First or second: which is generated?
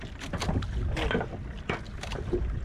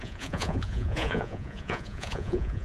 second